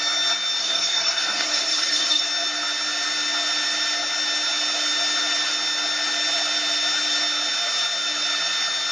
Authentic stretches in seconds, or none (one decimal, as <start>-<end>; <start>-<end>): 0.0-0.6; 2.2-8.9